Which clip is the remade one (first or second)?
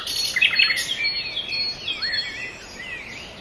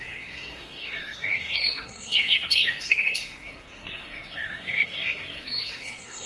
second